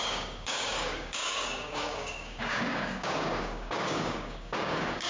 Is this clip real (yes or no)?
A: no